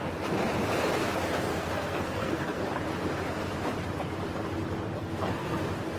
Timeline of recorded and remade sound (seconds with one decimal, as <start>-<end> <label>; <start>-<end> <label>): 0.0-1.5 recorded; 1.5-2.6 remade; 2.6-5.0 recorded; 5.0-5.6 remade; 5.6-6.0 recorded